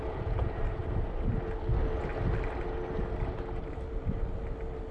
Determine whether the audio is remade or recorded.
recorded